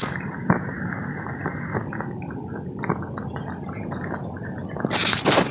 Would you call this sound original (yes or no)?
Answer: yes